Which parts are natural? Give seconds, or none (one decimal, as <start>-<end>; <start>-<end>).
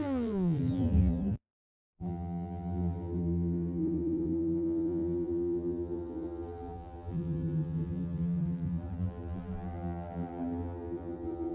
none